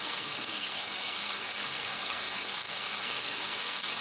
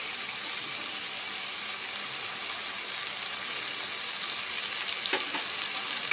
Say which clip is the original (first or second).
second